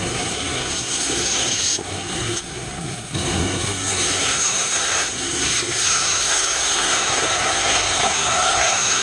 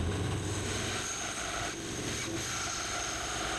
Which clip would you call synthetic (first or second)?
first